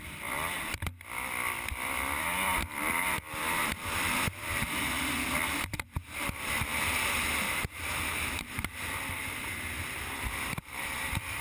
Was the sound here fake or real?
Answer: fake